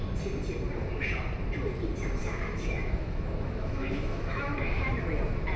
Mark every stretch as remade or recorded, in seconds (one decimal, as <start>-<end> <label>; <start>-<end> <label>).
0.0-2.2 recorded; 2.2-4.9 remade; 4.9-5.6 recorded